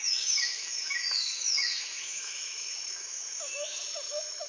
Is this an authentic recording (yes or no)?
no